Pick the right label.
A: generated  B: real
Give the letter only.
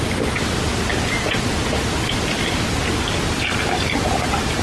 B